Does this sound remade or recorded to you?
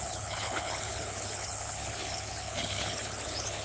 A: remade